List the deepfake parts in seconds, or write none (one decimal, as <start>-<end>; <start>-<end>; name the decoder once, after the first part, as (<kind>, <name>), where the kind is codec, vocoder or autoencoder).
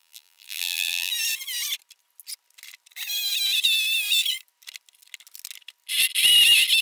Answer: 0.0-1.1 (vocoder, BigVGAN v2)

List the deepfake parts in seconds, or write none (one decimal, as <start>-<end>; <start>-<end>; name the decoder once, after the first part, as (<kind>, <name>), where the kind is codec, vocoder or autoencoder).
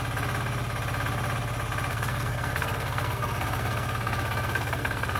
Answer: 1.9-5.2 (codec, SNAC)